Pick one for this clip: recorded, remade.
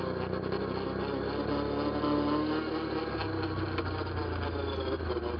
recorded